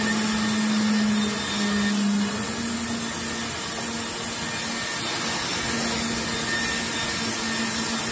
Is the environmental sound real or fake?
real